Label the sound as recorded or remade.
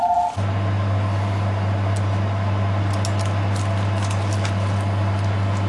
recorded